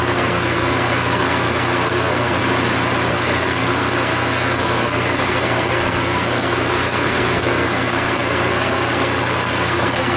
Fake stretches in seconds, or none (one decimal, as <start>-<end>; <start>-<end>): 0.0-2.4; 3.1-10.2